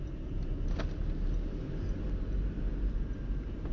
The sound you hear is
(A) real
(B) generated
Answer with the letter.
A